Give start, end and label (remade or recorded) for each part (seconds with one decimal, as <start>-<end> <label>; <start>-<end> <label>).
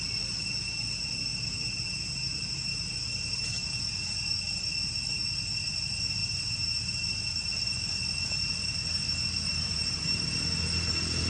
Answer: 0.0-1.3 recorded; 1.3-3.8 remade; 3.8-6.2 recorded; 6.2-7.0 remade; 7.0-9.5 recorded; 9.5-10.3 remade; 10.3-11.3 recorded